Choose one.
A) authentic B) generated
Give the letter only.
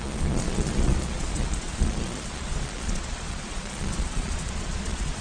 B